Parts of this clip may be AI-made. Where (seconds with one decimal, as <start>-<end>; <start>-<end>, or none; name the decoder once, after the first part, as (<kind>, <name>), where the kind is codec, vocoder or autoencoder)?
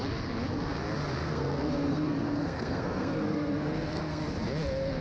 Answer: 1.2-4.2 (codec, SNAC)